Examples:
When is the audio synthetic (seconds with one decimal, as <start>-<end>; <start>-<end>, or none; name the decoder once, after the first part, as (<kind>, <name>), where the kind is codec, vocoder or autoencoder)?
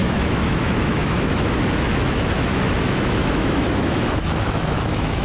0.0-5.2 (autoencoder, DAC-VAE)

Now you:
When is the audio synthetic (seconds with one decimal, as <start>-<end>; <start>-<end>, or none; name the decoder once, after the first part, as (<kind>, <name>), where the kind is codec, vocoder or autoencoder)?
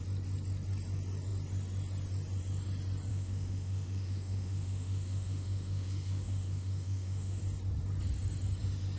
3.1-7.4 (autoencoder, DAC-VAE)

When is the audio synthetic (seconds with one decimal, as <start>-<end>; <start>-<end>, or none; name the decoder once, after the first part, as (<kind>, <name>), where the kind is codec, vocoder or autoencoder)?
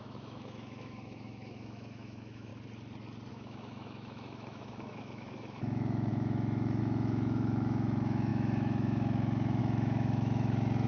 0.0-2.5 (autoencoder, DAC-VAE); 3.3-10.9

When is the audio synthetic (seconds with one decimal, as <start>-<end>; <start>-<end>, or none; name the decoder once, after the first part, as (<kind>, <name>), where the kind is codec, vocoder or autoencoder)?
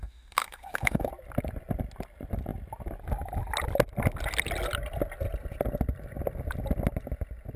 0.0-1.1 (autoencoder, DAC-VAE)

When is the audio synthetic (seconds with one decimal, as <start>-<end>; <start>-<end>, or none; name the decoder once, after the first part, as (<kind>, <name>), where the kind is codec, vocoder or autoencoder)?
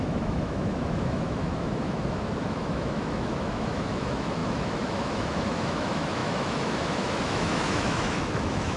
0.0-8.8 (autoencoder, DAC-VAE)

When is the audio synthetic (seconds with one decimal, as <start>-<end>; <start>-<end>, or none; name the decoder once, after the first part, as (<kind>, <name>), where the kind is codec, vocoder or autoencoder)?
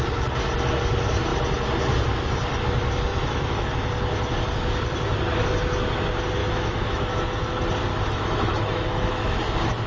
3.1-3.7 (autoencoder, DAC-VAE); 6.4-7.1; 7.9-9.4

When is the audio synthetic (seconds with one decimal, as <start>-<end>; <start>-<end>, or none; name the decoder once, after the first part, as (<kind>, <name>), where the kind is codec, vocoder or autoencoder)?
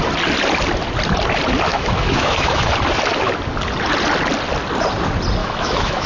1.7-2.7 (autoencoder, DAC-VAE); 5.4-6.1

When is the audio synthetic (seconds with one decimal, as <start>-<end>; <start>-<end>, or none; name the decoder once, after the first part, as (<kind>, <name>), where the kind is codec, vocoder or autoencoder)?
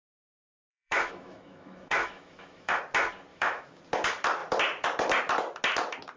0.7-2.8 (autoencoder, DAC-VAE); 3.3-3.8